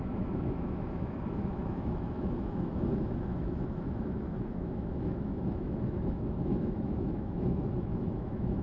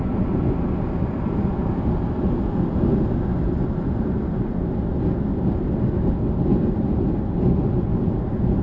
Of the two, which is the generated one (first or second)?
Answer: first